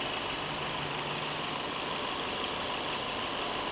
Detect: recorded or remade recorded